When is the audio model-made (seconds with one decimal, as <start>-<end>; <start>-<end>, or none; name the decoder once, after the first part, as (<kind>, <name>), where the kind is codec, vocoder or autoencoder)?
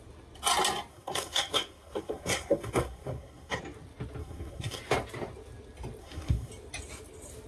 0.9-3.6 (codec, SNAC); 4.2-4.8; 6.0-6.5